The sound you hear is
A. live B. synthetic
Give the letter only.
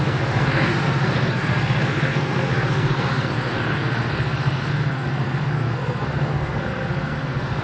B